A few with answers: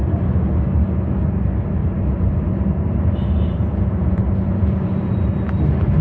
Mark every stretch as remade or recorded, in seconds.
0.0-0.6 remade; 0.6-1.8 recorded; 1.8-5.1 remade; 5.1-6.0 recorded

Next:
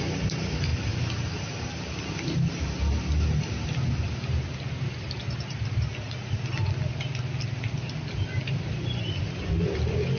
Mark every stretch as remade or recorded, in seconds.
0.0-10.2 recorded

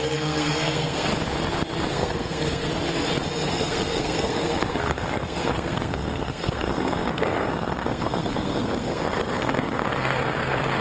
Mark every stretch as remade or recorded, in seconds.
0.0-1.1 remade; 1.1-1.9 recorded; 1.9-2.7 remade; 2.7-3.5 recorded; 3.5-10.8 remade

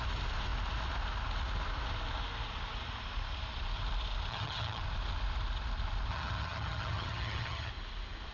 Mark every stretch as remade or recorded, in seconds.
0.0-4.3 recorded; 4.3-4.8 remade; 4.8-6.1 recorded; 6.1-7.7 remade; 7.7-8.3 recorded

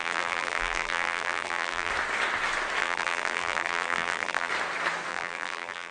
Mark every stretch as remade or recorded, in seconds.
0.0-1.9 remade; 1.9-2.8 recorded; 2.8-4.5 remade; 4.5-5.1 recorded; 5.1-5.9 remade

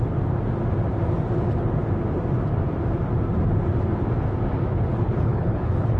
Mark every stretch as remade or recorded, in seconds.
0.0-4.9 recorded; 4.9-6.0 remade

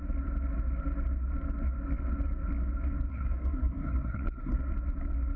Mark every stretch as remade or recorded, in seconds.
0.0-3.1 recorded; 3.1-4.6 remade; 4.6-5.4 recorded